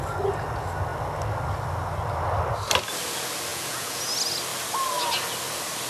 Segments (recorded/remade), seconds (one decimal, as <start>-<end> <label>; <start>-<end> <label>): 0.0-3.5 recorded; 3.5-4.0 remade; 4.0-5.9 recorded